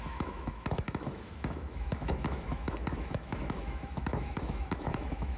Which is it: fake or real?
fake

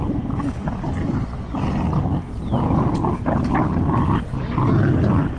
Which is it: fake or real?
real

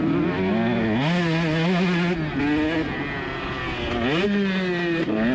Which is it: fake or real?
real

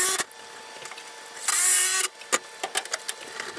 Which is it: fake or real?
real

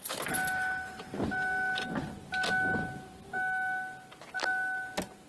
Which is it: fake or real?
real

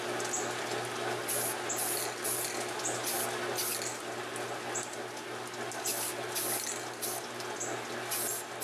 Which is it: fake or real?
real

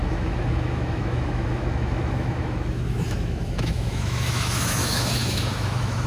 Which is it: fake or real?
fake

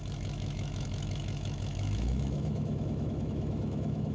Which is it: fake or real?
fake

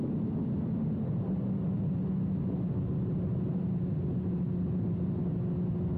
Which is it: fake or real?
real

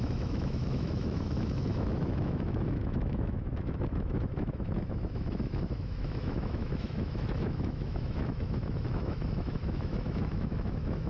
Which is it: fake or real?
fake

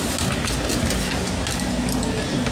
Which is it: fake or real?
real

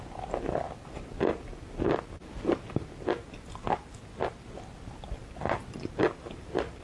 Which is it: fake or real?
real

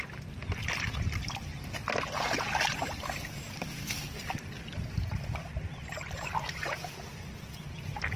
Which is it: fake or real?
real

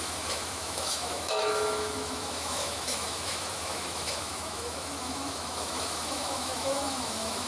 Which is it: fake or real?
fake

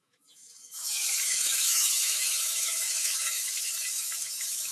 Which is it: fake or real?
fake